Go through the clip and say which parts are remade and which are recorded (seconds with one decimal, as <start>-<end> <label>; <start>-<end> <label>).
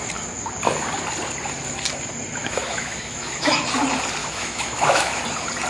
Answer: 0.0-2.4 recorded; 2.4-3.5 remade; 3.5-4.2 recorded; 4.2-5.2 remade; 5.2-5.7 recorded